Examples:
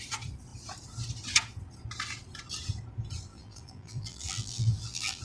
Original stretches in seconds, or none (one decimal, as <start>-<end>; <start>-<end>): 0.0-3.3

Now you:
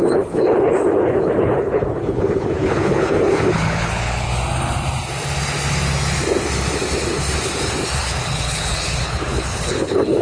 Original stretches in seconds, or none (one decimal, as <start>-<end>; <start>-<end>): 4.3-8.0

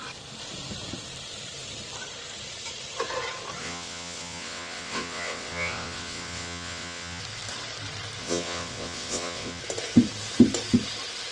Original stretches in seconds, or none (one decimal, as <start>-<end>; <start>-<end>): 0.0-3.6; 7.2-8.2; 9.6-11.3

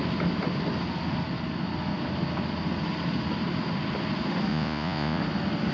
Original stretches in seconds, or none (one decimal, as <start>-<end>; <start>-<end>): 0.0-4.5; 5.2-5.7

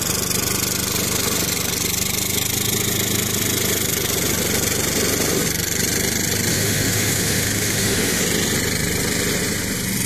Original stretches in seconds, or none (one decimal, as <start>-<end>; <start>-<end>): 0.0-6.5; 8.2-10.1